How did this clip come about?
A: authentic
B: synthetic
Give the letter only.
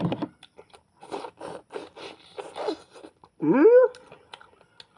A